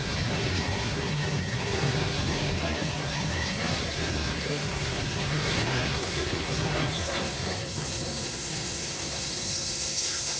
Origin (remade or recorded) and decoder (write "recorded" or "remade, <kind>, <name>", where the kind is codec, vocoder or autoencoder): remade, codec, SNAC